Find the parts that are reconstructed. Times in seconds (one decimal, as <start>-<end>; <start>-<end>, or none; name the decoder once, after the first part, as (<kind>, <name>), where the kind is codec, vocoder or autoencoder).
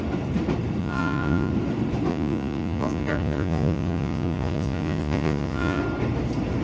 0.8-1.5 (vocoder, Vocos); 2.1-5.8